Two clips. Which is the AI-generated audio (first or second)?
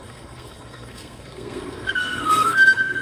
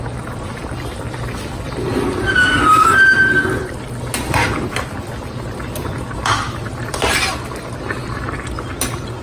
first